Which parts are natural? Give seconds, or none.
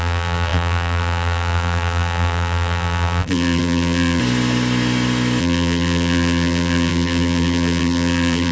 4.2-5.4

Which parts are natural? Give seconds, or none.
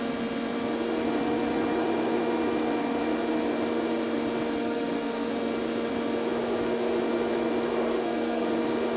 0.0-4.6; 5.3-7.7; 8.5-9.0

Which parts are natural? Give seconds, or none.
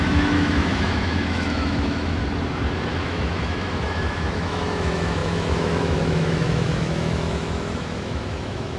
2.2-2.9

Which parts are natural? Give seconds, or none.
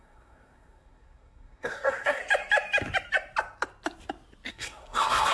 2.2-4.5